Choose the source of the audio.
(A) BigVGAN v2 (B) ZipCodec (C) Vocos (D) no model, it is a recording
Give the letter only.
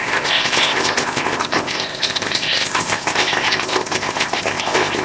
B